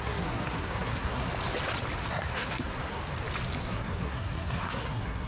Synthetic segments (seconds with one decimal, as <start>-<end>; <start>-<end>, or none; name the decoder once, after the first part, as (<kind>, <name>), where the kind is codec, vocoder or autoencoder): 0.0-1.3 (codec, SNAC); 2.1-3.0; 3.6-5.3